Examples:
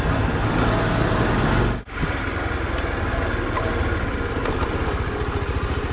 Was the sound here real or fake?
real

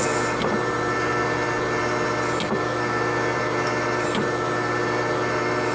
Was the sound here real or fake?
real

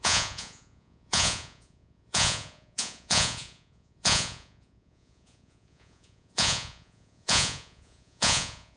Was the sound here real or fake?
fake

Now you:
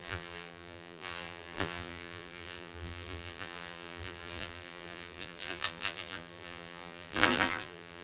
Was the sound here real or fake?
fake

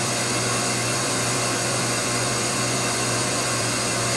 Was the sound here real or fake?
fake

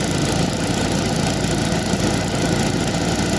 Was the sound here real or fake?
real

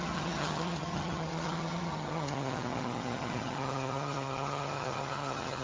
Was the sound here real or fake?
fake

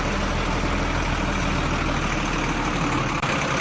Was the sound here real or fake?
real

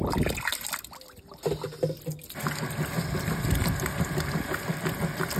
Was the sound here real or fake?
real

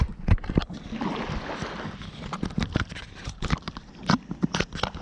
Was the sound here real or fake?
real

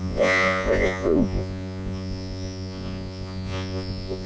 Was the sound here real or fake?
fake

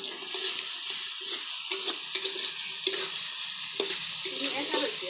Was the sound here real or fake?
real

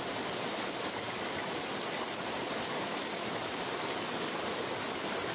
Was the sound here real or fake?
real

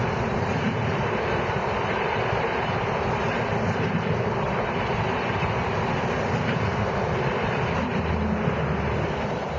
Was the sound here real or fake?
real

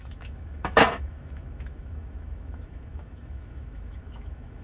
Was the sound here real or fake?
fake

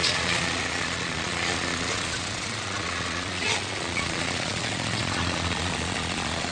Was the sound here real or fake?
fake